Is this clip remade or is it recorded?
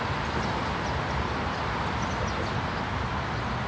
recorded